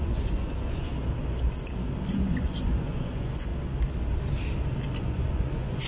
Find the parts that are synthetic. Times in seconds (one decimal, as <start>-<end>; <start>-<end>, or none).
0.0-0.9; 2.1-3.5; 5.0-5.9